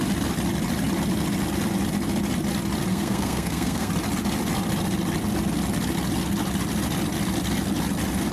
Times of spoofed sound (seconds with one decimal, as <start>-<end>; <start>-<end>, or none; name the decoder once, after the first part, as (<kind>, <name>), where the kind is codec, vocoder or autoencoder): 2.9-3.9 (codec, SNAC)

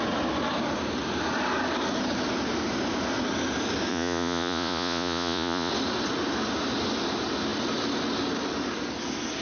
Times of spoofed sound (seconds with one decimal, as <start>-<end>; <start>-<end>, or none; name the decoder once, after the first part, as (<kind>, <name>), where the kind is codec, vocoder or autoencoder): 3.9-5.7 (vocoder, Vocos)

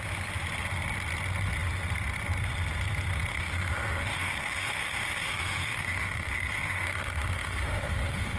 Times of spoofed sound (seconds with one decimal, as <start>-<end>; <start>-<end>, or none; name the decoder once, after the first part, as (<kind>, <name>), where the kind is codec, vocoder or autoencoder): 3.3-8.4 (autoencoder, DAC-VAE)

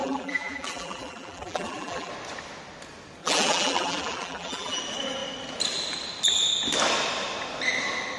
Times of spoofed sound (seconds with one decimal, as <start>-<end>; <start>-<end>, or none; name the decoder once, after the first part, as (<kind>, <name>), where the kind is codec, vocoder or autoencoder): 0.0-2.1 (vocoder, BigVGAN v2); 3.2-4.8

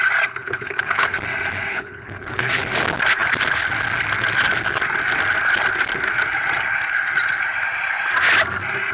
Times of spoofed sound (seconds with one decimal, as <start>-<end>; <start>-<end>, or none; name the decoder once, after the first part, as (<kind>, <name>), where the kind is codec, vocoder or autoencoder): 0.4-1.2 (codec, HILCodec); 1.7-2.5

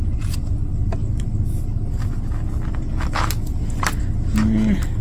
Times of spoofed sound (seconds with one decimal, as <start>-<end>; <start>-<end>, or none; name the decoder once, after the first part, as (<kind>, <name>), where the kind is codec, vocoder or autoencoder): none

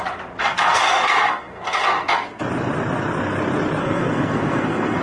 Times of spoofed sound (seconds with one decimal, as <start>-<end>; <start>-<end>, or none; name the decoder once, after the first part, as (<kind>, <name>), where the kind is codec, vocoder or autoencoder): 0.4-2.4 (codec, SNAC); 3.8-5.0

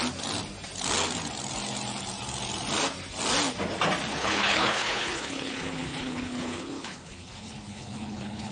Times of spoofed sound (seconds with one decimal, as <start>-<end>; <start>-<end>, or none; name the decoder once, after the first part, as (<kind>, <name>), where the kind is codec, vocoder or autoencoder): 4.1-8.5 (codec, HILCodec)